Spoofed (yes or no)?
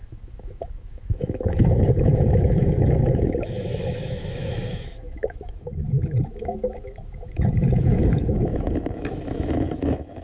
yes